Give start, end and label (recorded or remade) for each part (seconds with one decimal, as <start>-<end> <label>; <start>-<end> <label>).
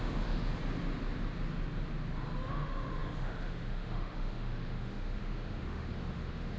0.0-0.6 remade; 0.6-2.5 recorded; 2.5-6.6 remade